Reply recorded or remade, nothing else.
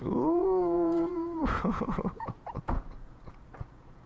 remade